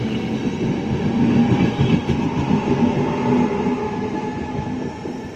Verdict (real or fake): real